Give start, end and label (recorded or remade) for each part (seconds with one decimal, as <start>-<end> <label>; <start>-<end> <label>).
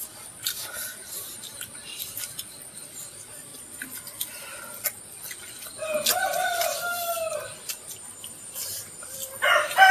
0.0-9.9 recorded